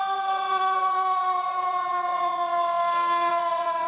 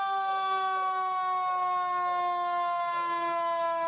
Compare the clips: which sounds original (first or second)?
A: second